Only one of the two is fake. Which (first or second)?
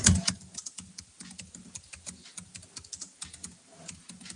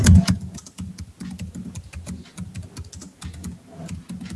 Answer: first